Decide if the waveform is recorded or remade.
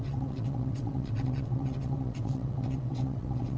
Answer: remade